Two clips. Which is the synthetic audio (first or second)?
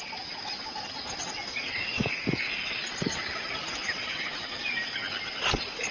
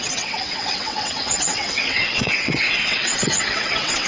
second